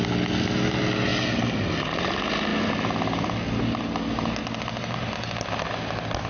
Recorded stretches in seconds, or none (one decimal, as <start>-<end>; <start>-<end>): 0.0-6.3